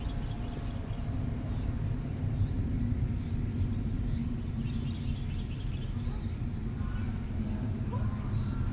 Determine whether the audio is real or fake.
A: real